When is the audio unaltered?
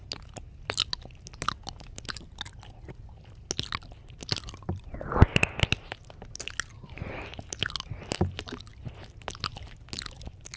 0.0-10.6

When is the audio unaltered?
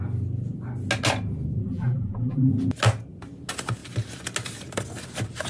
0.0-1.6; 2.5-5.5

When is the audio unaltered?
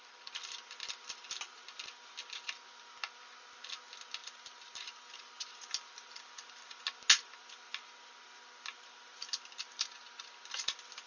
0.0-4.2; 5.1-11.1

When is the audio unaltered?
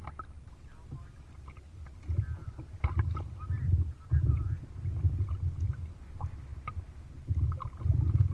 0.0-2.4; 3.2-8.3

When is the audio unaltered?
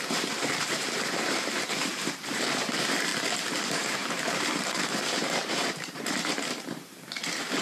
3.1-3.6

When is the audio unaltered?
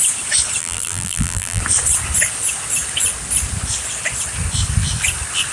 0.0-0.6; 1.6-5.5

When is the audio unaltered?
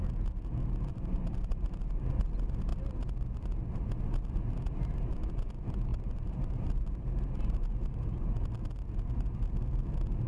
0.0-0.9; 1.9-5.9; 8.1-10.3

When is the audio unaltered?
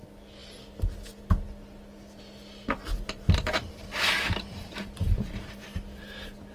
0.0-2.9; 5.5-6.5